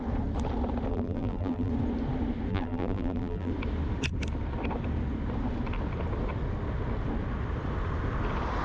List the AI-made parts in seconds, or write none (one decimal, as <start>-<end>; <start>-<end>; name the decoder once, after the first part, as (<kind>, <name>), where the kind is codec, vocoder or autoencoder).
0.9-1.7 (vocoder, BigVGAN v2); 2.5-3.5